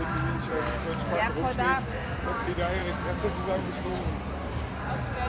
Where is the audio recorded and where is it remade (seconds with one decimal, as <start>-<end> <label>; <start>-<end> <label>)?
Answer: 0.0-5.3 recorded